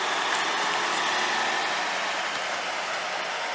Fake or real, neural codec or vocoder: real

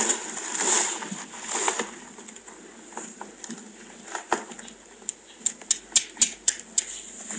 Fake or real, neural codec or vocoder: real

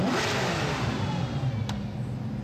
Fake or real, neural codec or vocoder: real